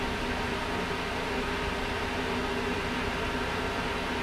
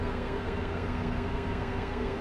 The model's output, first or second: second